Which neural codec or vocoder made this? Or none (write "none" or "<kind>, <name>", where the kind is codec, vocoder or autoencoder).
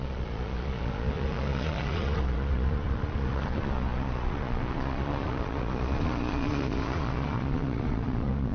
vocoder, Vocos